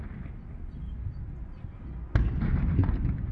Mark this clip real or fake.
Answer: real